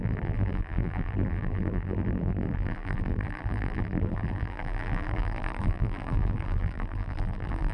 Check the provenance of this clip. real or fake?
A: fake